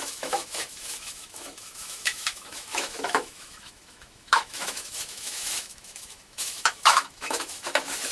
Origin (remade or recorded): remade